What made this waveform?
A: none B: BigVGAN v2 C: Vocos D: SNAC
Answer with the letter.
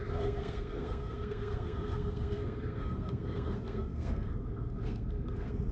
D